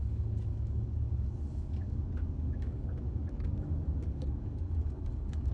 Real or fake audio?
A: fake